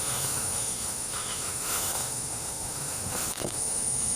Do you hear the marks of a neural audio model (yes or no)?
yes